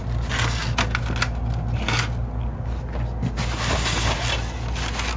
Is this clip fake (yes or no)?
no